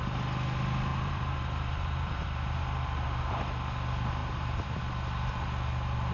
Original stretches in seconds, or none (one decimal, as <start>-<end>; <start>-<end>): 0.0-0.9; 2.6-4.2; 4.8-6.1

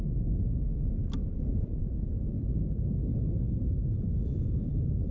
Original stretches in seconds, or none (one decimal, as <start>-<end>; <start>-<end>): 0.0-3.1